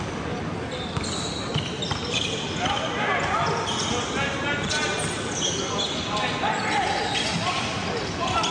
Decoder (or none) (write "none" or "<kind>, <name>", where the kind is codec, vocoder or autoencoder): none